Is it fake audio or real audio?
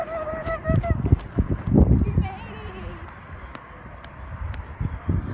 fake